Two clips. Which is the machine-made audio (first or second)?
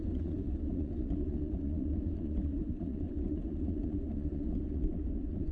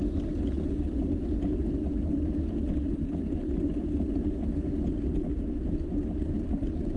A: first